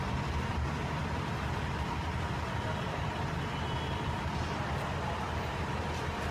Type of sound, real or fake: real